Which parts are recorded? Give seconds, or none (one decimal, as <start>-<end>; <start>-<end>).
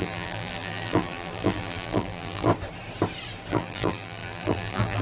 2.5-3.5